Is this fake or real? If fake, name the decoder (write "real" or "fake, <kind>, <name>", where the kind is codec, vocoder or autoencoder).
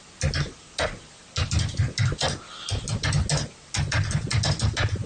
real